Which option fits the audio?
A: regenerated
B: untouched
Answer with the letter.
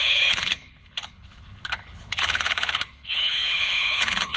A